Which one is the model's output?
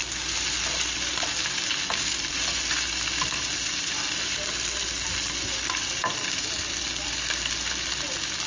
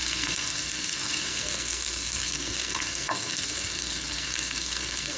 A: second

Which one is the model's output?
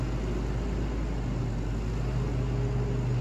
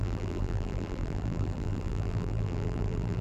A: second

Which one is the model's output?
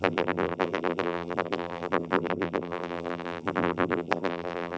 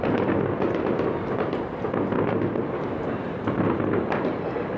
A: first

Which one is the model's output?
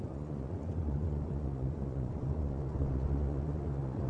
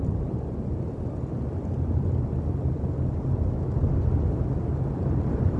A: first